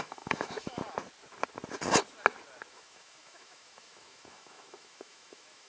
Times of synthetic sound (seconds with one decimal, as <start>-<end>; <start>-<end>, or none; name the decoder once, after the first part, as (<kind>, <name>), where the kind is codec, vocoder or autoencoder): 0.0-0.8 (autoencoder, DAC-VAE); 2.7-5.7